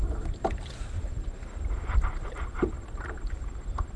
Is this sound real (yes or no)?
yes